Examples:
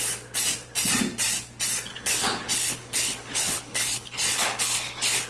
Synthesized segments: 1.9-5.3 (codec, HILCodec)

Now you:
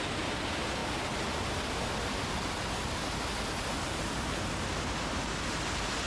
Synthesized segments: none

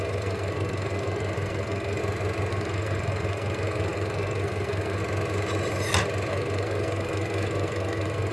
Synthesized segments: 0.0-2.0 (codec, SNAC); 2.5-5.0; 6.3-8.3

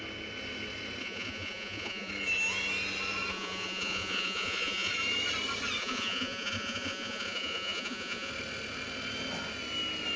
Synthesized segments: 1.0-2.1 (vocoder, Vocos); 3.3-4.9; 5.8-8.3

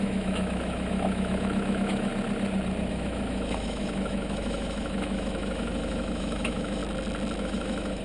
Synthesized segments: 0.0-2.1 (autoencoder, DAC-VAE); 2.9-6.8; 7.4-8.0